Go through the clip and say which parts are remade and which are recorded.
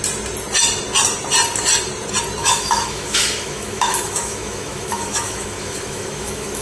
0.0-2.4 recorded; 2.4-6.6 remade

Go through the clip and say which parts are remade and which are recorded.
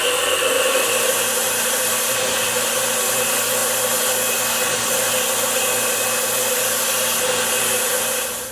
0.0-8.5 recorded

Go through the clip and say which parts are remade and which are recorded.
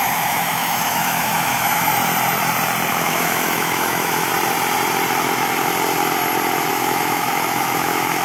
0.0-1.9 remade; 1.9-2.9 recorded; 2.9-4.3 remade; 4.3-6.7 recorded; 6.7-8.2 remade